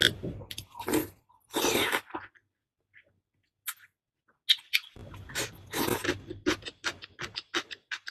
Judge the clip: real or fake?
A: real